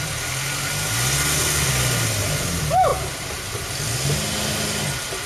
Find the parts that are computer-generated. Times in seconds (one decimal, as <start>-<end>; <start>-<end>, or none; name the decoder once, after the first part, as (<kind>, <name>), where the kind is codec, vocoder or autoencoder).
none

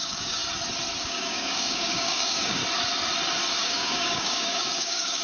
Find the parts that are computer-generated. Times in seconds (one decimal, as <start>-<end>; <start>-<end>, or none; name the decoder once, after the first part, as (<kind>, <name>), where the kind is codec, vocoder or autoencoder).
0.0-0.4 (codec, DAC); 1.0-2.6; 3.6-5.2